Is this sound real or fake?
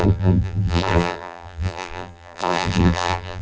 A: fake